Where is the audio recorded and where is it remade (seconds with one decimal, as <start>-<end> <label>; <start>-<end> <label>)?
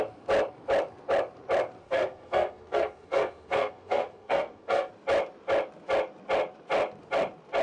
0.0-1.8 recorded; 1.8-4.9 remade; 4.9-7.6 recorded